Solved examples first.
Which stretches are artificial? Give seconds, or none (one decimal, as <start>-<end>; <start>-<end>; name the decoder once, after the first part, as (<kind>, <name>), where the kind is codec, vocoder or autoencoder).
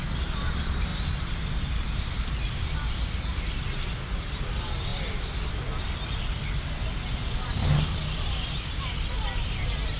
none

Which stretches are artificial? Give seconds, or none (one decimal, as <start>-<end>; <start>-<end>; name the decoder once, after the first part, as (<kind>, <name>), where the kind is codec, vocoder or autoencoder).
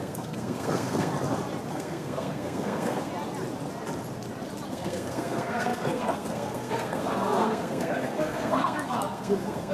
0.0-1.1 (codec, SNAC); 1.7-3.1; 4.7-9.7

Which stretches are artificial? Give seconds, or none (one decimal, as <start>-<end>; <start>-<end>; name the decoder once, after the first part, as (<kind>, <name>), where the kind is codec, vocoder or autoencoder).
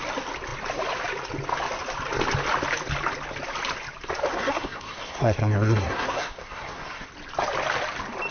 4.3-7.1 (codec, SNAC)